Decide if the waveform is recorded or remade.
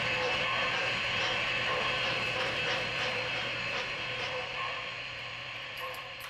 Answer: remade